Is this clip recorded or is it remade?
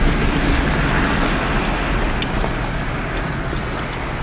recorded